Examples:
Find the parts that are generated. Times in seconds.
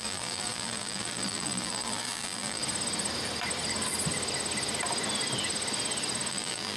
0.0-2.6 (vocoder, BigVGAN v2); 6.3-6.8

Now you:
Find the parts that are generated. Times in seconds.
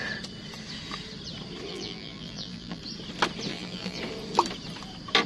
1.7-2.8 (vocoder, BigVGAN v2); 3.5-4.0